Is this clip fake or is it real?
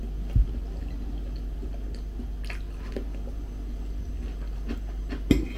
real